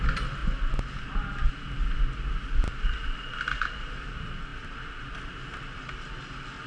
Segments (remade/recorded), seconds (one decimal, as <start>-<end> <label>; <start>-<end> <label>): 0.0-6.7 recorded